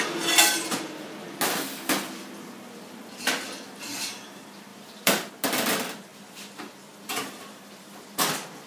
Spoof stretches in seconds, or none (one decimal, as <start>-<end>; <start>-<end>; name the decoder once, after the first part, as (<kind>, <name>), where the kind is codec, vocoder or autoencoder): 4.7-5.3 (vocoder, BigVGAN v2); 6.1-7.6